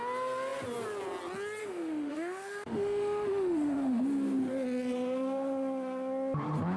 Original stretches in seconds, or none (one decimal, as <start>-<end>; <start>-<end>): 0.0-1.6; 4.0-6.8